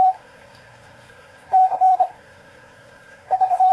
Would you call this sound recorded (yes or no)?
no